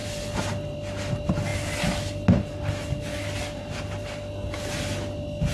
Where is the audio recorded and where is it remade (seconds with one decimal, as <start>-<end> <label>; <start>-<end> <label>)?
0.0-5.5 recorded